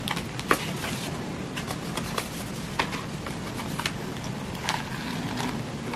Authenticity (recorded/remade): recorded